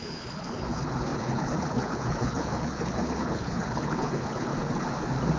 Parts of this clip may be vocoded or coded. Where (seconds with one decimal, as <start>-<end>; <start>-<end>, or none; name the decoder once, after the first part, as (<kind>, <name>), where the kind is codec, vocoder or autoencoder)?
0.0-4.5 (codec, HILCodec)